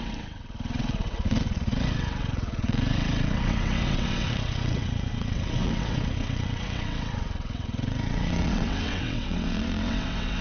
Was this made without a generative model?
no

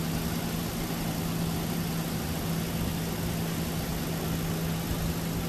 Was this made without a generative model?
yes